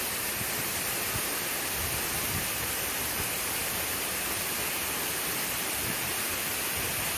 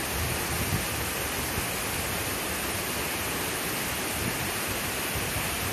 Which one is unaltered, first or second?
second